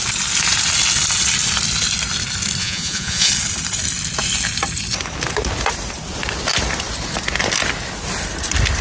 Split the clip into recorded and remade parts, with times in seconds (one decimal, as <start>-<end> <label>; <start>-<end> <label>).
0.0-2.6 recorded; 2.6-3.3 remade; 3.3-8.8 recorded

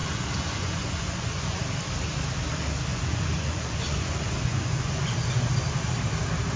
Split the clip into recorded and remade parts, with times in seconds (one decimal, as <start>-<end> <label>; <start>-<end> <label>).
0.0-1.6 remade; 1.6-2.9 recorded; 2.9-5.4 remade; 5.4-6.6 recorded

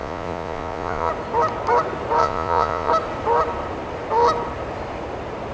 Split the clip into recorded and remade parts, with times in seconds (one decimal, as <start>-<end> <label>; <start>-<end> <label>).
0.0-1.1 remade; 1.1-2.2 recorded; 2.2-2.9 remade; 2.9-5.5 recorded